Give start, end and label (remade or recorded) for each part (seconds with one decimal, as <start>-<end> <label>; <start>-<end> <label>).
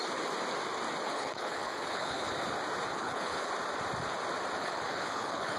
0.0-1.1 recorded; 1.1-2.3 remade; 2.3-2.9 recorded; 2.9-3.5 remade; 3.5-4.6 recorded; 4.6-5.6 remade